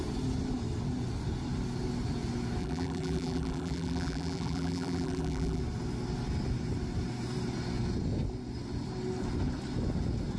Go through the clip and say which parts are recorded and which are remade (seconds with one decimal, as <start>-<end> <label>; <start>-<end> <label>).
0.0-2.6 recorded; 2.6-5.6 remade; 5.6-10.4 recorded